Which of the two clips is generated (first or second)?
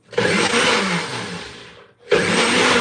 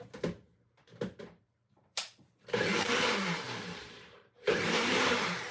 second